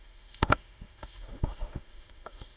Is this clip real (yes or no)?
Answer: no